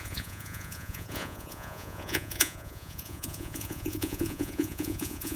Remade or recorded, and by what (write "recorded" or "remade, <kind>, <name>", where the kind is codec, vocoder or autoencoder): remade, vocoder, Vocos